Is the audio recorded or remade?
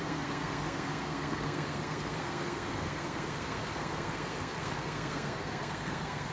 remade